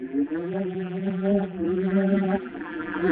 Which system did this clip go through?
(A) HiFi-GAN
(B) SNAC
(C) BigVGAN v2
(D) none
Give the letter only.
C